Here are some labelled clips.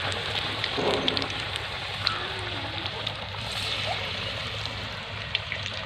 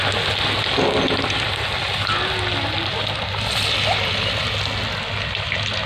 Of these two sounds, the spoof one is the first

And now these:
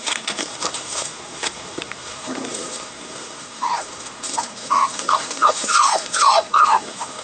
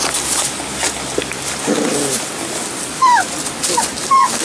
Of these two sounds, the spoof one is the first